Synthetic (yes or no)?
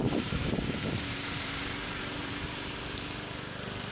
yes